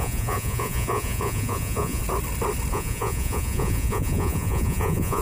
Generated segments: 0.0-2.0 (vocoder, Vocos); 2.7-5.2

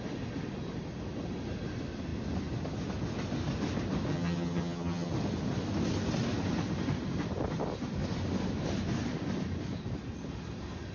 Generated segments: 4.1-5.1 (vocoder, HiFi-GAN)

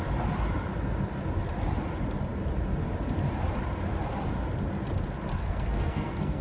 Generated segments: 5.3-6.4 (codec, SNAC)

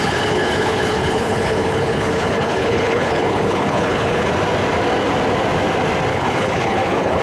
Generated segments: 0.0-4.3 (codec, HILCodec); 6.1-7.2

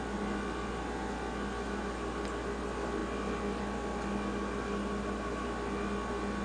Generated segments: none

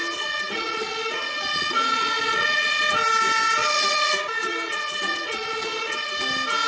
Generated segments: 0.0-2.8 (vocoder, Vocos); 3.6-6.1

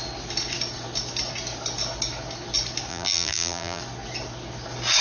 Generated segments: 2.9-3.8 (vocoder, BigVGAN v2)